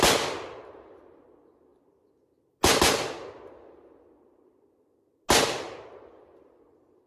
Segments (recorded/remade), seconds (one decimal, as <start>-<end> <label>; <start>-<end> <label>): 0.0-7.1 recorded